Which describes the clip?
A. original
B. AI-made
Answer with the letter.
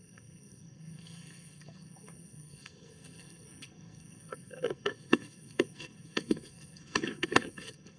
B